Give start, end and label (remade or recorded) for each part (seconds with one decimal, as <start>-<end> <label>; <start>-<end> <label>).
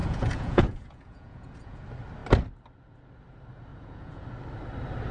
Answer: 0.0-1.8 remade; 1.8-3.7 recorded; 3.7-4.2 remade; 4.2-5.1 recorded